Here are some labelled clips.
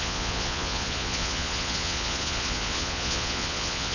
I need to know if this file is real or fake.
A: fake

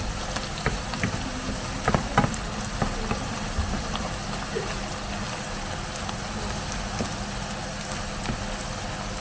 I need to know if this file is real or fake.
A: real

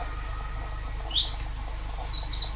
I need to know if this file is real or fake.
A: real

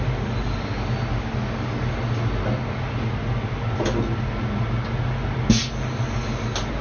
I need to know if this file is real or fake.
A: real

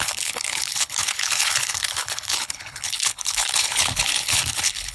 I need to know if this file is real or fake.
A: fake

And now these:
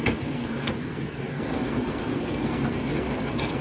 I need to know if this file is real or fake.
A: fake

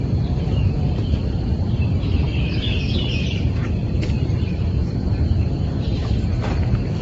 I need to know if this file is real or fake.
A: fake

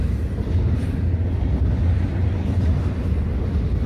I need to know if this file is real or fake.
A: real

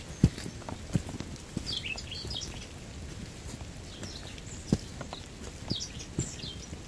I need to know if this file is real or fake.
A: real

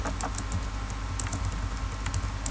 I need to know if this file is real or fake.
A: real